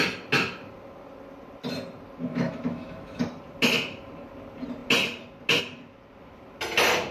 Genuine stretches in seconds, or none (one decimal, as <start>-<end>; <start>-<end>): 0.0-2.3; 3.2-7.1